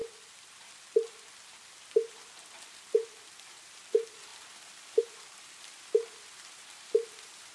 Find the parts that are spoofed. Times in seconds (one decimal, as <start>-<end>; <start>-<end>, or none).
2.4-7.5